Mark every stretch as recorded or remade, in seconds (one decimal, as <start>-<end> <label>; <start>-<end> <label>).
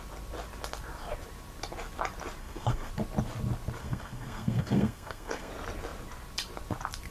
0.0-2.4 recorded; 2.4-2.9 remade; 2.9-3.8 recorded; 3.8-5.5 remade; 5.5-7.1 recorded